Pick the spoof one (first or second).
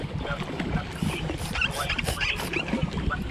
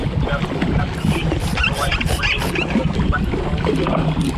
first